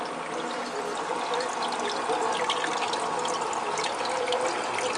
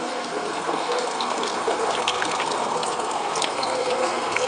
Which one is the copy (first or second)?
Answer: second